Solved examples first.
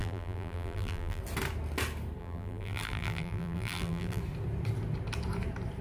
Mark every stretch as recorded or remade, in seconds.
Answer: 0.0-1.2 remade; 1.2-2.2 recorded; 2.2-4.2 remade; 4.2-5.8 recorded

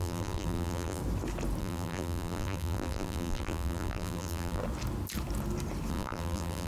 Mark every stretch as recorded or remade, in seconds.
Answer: 0.0-1.0 remade; 1.0-1.6 recorded; 1.6-4.6 remade; 4.6-5.9 recorded; 5.9-6.7 remade

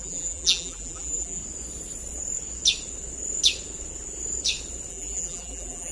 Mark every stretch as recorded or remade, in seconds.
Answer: 0.0-1.4 remade; 1.4-4.9 recorded; 4.9-5.9 remade

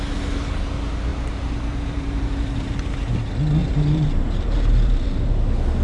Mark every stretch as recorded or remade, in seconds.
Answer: 0.0-1.1 recorded; 1.1-2.7 remade; 2.7-3.6 recorded; 3.6-5.3 remade; 5.3-5.8 recorded

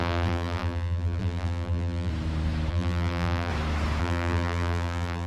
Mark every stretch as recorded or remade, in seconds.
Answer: 0.0-2.1 remade; 2.1-2.7 recorded; 2.7-3.5 remade; 3.5-4.0 recorded; 4.0-5.3 remade